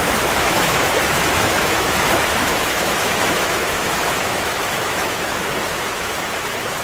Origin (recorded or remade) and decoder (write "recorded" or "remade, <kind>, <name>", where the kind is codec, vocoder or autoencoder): remade, autoencoder, DAC-VAE